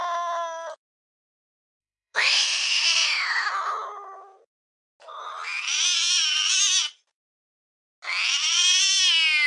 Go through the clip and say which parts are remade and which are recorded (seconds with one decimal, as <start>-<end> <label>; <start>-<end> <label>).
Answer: 0.0-1.8 recorded; 1.8-3.5 remade; 3.5-9.5 recorded